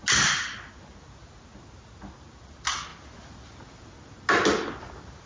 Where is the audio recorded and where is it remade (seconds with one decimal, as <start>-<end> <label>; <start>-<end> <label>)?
0.0-5.3 recorded